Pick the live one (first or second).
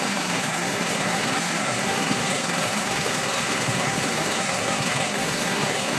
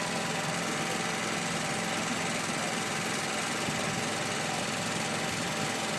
second